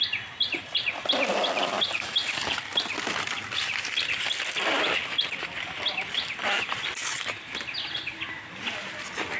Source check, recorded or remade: recorded